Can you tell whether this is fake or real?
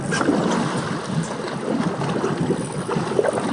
real